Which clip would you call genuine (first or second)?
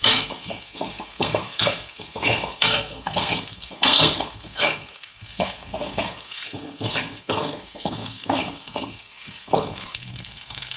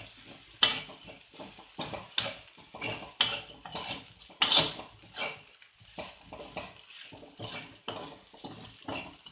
second